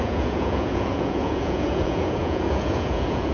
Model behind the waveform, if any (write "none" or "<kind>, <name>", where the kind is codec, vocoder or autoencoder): vocoder, Vocos